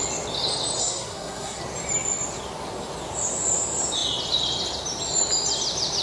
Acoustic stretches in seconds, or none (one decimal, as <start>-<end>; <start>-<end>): 0.0-0.8; 1.6-6.0